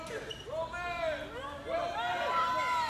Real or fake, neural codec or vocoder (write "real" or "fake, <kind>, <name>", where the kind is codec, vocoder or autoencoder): real